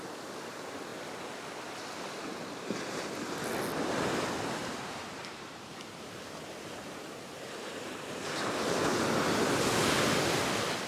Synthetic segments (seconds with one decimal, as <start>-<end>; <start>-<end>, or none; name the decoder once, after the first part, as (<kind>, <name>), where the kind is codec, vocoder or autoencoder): 4.6-8.2 (vocoder, BigVGAN v2)